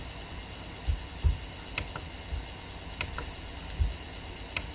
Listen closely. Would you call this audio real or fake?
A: real